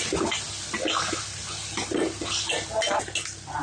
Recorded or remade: recorded